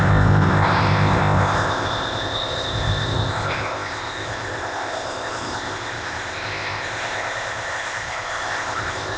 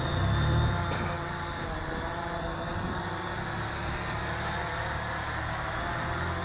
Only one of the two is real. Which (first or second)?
second